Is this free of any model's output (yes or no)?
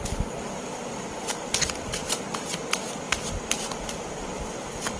yes